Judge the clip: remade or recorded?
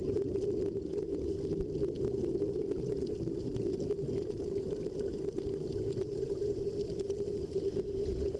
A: recorded